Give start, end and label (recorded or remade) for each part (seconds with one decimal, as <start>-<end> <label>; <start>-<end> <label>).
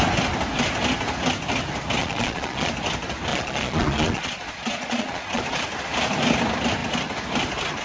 0.0-2.0 recorded; 2.0-2.7 remade; 2.7-3.3 recorded; 3.3-5.4 remade; 5.4-7.8 recorded